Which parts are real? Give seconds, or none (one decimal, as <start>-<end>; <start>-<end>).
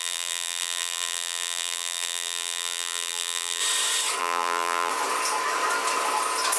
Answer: 3.6-4.2; 4.9-6.6